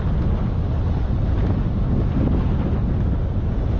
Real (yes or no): yes